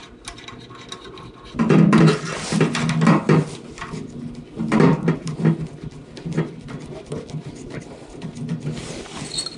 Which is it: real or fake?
real